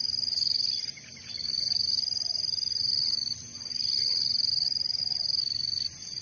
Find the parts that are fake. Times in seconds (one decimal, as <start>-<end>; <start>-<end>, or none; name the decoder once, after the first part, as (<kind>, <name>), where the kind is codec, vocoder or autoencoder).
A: none